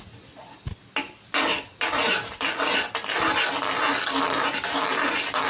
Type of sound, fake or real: real